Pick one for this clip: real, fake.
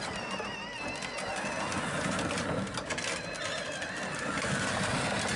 real